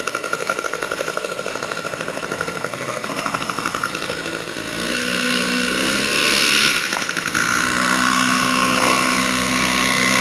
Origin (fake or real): fake